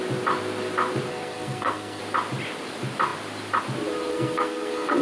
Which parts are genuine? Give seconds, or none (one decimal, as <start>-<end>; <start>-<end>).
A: 0.0-1.1; 2.0-4.1

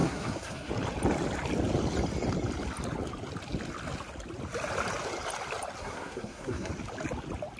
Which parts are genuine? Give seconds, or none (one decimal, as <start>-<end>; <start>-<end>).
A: 0.7-5.8; 6.7-7.6

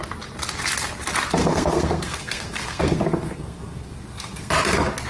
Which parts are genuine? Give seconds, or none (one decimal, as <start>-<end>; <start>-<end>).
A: 0.0-1.4; 4.5-5.1

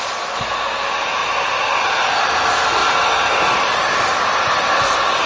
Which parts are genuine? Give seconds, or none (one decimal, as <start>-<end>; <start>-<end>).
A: 0.0-5.3